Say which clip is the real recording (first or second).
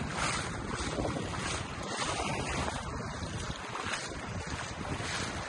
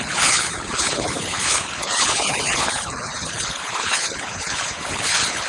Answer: first